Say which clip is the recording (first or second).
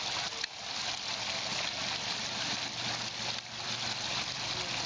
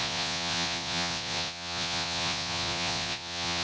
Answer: first